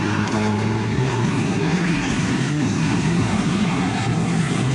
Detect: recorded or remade remade